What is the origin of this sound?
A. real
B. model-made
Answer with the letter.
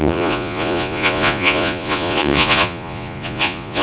B